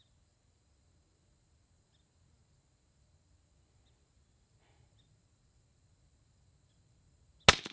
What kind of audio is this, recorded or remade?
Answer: recorded